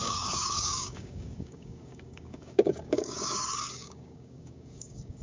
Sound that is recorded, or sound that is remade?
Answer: remade